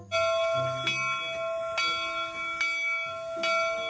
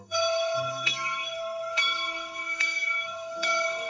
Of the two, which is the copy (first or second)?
second